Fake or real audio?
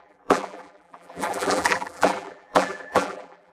fake